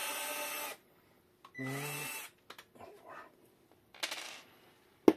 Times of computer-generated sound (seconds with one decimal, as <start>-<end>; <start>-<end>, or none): none